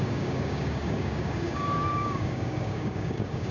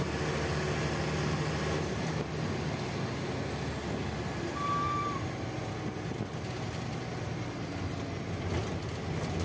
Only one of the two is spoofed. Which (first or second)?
first